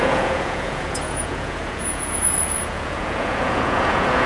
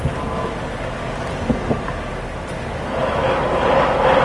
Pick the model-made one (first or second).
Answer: first